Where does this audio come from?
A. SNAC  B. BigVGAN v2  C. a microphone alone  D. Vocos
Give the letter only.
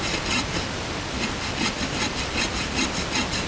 C